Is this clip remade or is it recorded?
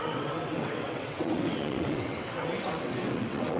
remade